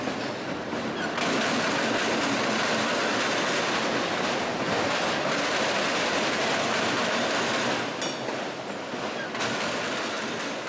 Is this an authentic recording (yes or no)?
yes